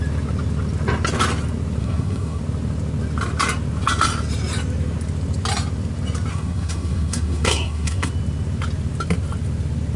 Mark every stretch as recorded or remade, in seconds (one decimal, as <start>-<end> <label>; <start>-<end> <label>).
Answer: 0.0-1.8 recorded; 1.8-2.4 remade; 2.4-6.3 recorded; 6.3-8.1 remade; 8.1-10.0 recorded